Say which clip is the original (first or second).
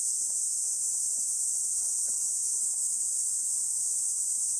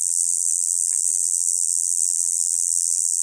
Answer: first